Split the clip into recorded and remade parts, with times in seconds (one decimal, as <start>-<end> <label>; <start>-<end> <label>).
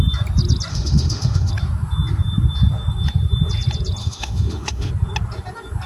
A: 0.0-0.7 recorded; 0.7-1.5 remade; 1.5-4.0 recorded; 4.0-4.9 remade; 4.9-5.9 recorded